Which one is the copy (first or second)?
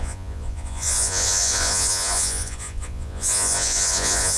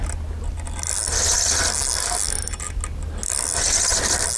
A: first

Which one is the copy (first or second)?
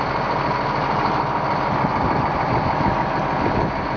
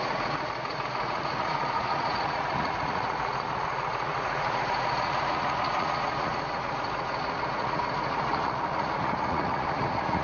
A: second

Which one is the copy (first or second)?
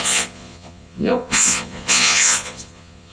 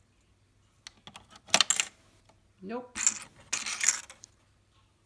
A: first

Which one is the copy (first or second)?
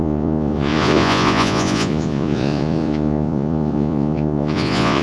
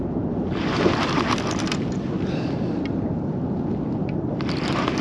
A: first